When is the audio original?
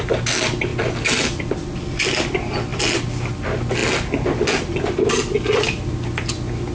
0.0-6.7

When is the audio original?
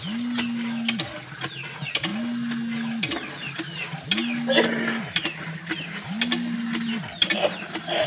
0.0-8.1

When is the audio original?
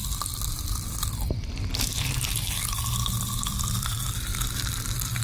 1.9-3.1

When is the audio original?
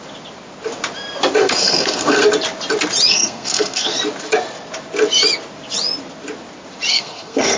0.0-1.4; 2.2-3.1; 4.0-6.9